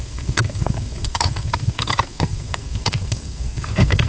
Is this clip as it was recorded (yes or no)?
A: no